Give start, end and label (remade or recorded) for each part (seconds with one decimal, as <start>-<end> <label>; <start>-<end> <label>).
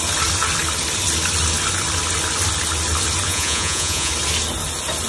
0.0-3.3 recorded; 3.3-4.1 remade; 4.1-5.1 recorded